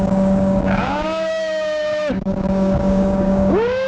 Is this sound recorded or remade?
remade